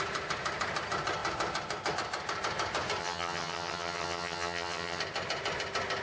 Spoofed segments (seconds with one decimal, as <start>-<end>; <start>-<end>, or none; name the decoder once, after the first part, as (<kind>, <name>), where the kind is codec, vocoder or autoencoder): 3.0-5.0 (vocoder, HiFi-GAN)